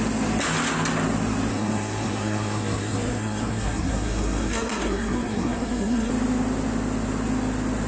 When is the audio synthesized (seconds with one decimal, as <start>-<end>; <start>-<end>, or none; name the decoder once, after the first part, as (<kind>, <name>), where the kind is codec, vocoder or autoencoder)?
1.5-6.1 (codec, SNAC)